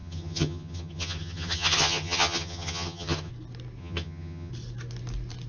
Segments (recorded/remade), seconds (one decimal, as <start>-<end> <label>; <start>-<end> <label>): 0.0-3.3 remade; 3.3-3.8 recorded; 3.8-4.5 remade; 4.5-5.5 recorded